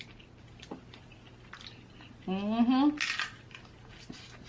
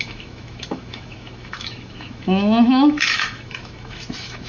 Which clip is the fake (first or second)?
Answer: second